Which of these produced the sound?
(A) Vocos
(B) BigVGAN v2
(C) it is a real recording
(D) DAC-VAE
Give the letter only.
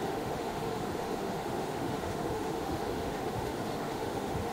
D